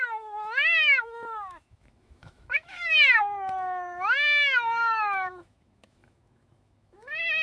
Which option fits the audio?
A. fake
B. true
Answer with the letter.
A